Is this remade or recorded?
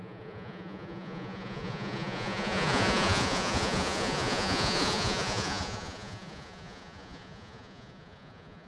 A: remade